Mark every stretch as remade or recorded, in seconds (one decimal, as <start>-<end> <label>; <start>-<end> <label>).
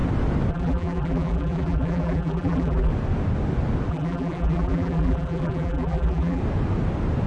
0.0-0.5 recorded; 0.5-2.9 remade; 2.9-3.9 recorded; 3.9-6.4 remade; 6.4-7.3 recorded